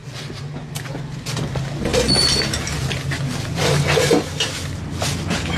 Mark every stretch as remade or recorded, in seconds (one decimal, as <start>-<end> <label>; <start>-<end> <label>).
0.0-5.6 recorded

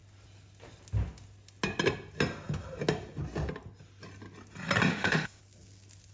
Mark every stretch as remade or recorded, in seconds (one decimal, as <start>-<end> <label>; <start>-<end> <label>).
0.0-4.9 recorded; 4.9-5.4 remade; 5.4-6.1 recorded